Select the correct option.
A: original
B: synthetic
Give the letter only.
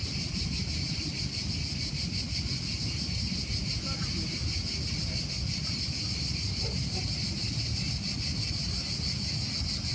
A